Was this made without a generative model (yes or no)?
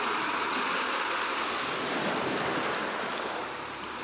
yes